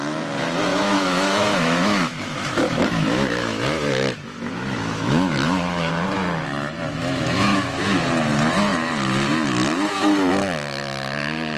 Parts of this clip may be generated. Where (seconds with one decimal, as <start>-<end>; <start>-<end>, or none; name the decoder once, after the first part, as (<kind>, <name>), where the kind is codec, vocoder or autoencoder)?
0.7-5.9 (autoencoder, DAC-VAE); 7.0-7.8